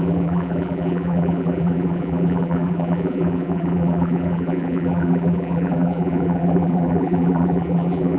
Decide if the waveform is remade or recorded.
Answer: remade